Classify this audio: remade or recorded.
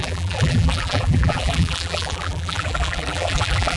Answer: remade